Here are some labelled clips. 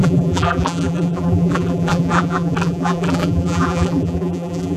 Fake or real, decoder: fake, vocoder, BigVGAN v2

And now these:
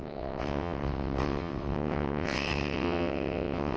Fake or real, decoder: fake, vocoder, WaveNeXt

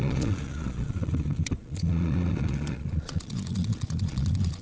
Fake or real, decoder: fake, vocoder, Vocos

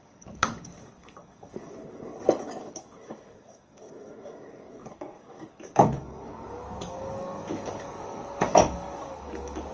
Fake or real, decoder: fake, codec, DAC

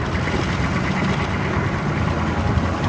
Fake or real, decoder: real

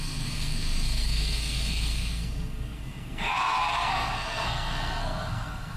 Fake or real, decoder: fake, codec, SNAC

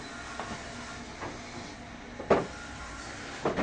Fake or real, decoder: real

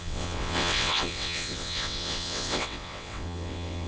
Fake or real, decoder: fake, vocoder, WaveNeXt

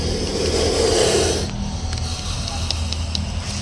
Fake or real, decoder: real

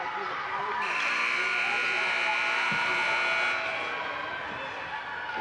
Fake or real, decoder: real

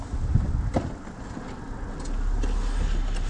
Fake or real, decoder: real